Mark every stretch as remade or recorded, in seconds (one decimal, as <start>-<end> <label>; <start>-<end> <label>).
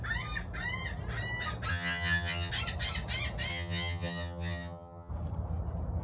0.0-1.7 recorded; 1.7-2.5 remade; 2.5-3.5 recorded; 3.5-5.1 remade; 5.1-6.0 recorded